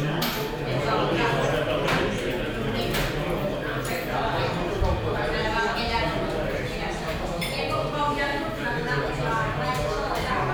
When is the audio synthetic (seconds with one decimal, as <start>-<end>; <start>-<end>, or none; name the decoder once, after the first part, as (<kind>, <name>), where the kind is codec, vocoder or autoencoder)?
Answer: 8.3-9.1 (vocoder, BigVGAN v2)